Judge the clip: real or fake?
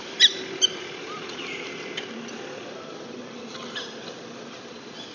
fake